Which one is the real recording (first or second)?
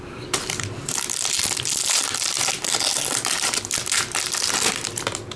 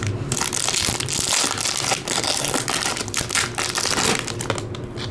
second